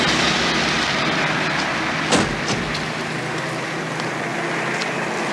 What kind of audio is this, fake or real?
real